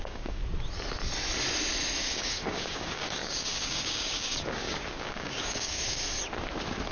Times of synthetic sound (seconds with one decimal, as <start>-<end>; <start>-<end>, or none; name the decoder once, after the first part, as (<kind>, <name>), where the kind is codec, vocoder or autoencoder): 0.0-0.4 (codec, DAC); 2.0-6.0